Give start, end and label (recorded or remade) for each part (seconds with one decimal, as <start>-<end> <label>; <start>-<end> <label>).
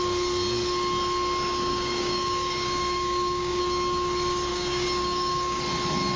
0.0-1.7 recorded; 1.7-3.6 remade; 3.6-4.5 recorded; 4.5-5.6 remade; 5.6-6.2 recorded